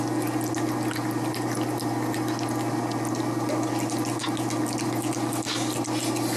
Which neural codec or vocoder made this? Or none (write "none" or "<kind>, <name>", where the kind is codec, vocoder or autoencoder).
none